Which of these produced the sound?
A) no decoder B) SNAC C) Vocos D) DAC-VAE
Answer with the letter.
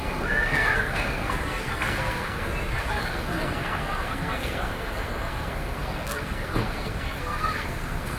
B